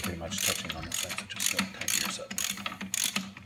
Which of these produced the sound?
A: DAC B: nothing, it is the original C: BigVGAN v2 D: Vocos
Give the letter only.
B